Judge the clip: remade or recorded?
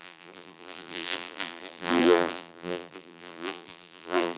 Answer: remade